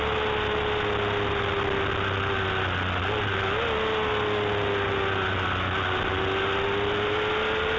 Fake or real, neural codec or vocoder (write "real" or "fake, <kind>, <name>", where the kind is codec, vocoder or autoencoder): real